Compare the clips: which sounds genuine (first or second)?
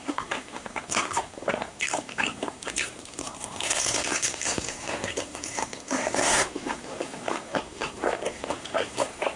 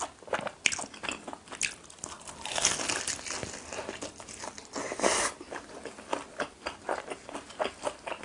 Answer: second